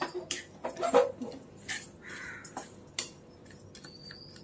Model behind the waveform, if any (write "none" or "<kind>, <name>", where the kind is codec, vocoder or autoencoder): none